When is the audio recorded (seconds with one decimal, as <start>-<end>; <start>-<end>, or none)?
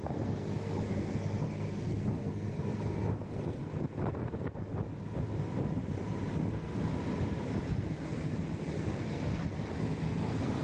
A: 4.7-6.5; 6.9-7.7